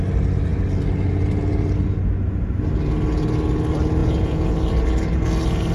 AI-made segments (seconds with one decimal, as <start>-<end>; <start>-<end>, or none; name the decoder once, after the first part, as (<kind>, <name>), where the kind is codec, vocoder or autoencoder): 4.0-4.5 (vocoder, Vocos)

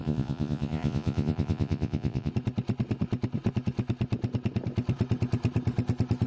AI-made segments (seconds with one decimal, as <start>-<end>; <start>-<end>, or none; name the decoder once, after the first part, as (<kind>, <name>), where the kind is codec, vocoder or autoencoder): 0.0-2.3 (vocoder, Vocos)

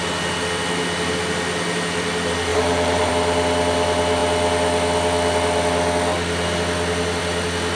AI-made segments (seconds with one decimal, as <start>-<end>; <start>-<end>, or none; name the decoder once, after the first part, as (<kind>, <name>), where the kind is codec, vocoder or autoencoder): 2.5-3.1 (vocoder, BigVGAN v2)

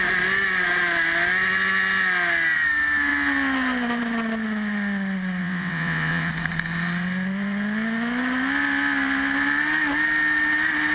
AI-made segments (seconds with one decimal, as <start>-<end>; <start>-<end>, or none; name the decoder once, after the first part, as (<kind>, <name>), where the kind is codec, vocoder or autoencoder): 5.4-6.3 (vocoder, WaveNeXt)

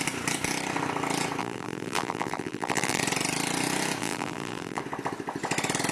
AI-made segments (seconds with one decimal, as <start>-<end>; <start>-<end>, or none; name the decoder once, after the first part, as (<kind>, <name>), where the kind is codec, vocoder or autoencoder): 1.4-3.0 (vocoder, BigVGAN v2); 4.0-4.8

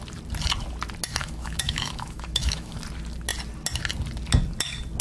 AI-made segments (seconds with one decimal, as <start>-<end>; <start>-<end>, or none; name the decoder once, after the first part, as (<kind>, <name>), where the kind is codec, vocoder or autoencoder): 1.2-2.8 (autoencoder, DAC-VAE)

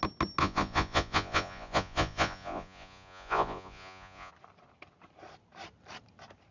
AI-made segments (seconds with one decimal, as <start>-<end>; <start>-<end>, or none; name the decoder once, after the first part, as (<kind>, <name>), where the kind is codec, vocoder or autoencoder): 0.4-4.3 (vocoder, Vocos)